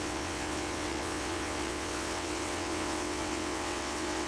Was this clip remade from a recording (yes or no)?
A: yes